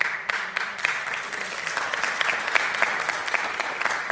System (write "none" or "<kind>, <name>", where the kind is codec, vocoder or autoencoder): none